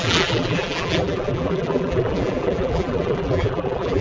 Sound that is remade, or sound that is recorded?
remade